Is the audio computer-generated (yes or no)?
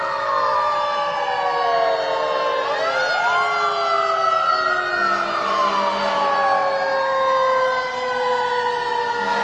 no